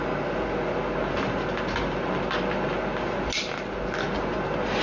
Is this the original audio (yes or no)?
yes